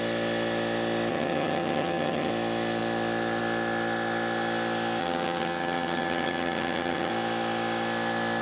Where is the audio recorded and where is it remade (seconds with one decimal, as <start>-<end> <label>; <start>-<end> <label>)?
0.0-1.1 recorded; 1.1-2.3 remade; 2.3-5.0 recorded; 5.0-7.1 remade; 7.1-8.4 recorded